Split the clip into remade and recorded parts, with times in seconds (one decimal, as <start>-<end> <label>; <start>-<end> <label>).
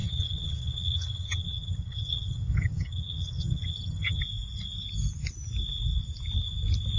0.0-4.2 remade; 4.2-7.0 recorded